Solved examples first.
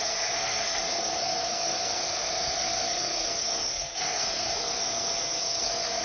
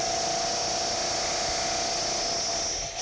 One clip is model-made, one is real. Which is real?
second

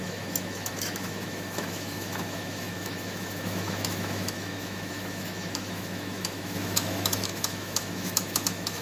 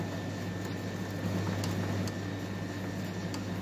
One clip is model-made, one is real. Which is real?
second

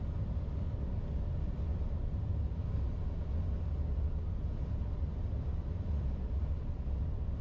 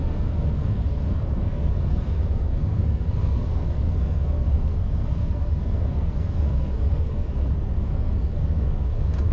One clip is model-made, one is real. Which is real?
first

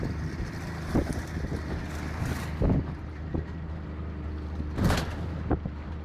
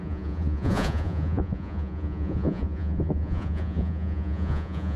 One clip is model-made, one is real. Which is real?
first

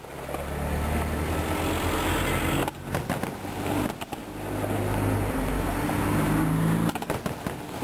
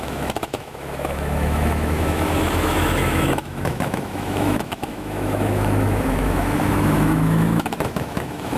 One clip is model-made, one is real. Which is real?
first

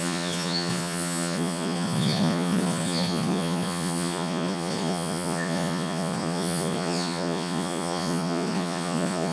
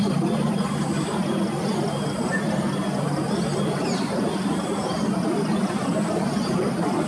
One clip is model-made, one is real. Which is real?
second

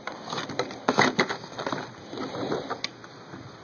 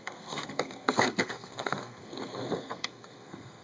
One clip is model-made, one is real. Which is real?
first